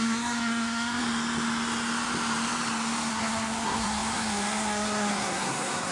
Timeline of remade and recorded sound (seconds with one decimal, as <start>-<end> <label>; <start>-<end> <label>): 0.0-1.0 remade; 1.0-3.1 recorded; 3.1-5.9 remade